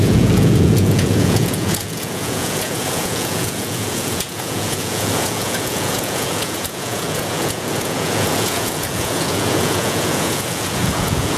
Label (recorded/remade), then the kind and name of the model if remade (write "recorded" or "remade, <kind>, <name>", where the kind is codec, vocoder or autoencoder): remade, vocoder, Vocos